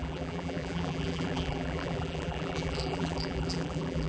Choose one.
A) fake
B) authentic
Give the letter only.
A